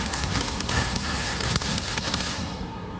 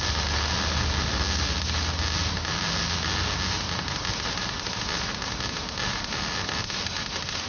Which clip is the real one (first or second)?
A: second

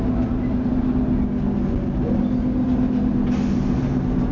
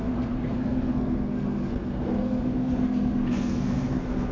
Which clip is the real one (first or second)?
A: first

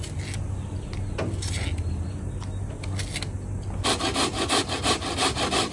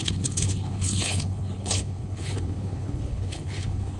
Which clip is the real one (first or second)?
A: first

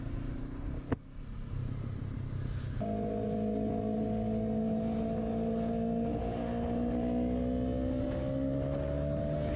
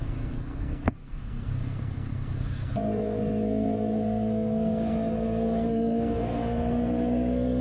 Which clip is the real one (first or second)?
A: first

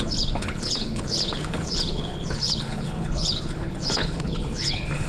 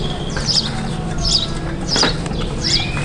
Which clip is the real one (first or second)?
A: second